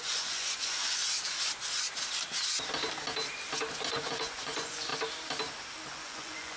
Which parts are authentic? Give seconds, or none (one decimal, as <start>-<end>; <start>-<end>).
1.0-3.9; 4.9-5.9